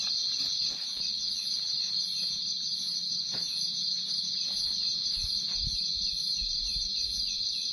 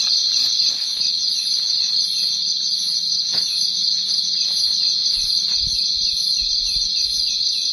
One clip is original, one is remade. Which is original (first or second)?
first